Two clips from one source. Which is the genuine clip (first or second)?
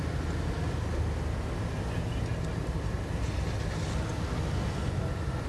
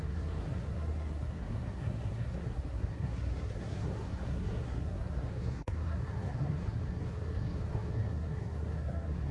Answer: first